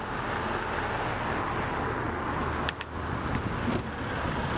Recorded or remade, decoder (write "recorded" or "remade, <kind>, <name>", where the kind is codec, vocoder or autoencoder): recorded